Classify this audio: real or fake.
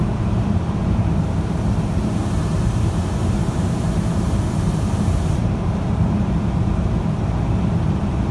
fake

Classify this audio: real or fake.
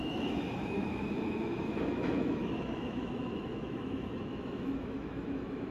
fake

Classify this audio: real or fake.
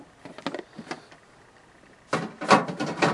real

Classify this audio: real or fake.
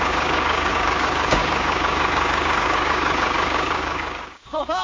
fake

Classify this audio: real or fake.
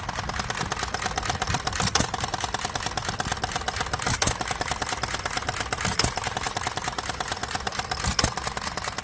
real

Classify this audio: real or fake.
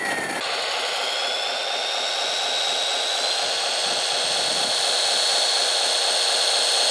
real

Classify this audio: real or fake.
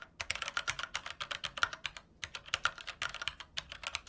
real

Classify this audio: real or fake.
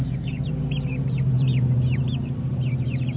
fake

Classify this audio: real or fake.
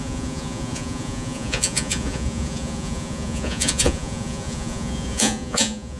fake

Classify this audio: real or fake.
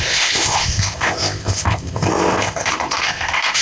fake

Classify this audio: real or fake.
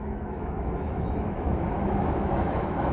fake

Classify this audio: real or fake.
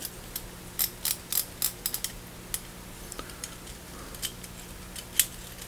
real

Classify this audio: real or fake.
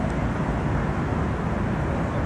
real